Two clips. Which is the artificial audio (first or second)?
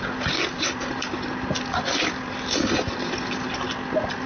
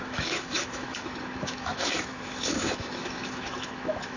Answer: second